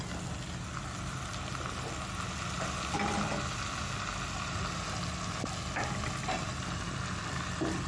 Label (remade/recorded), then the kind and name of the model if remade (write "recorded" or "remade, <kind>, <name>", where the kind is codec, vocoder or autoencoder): recorded